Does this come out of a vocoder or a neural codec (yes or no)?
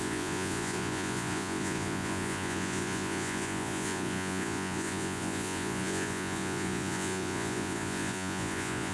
yes